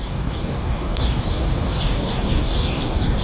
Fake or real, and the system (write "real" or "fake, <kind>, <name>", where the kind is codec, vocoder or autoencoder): fake, codec, DAC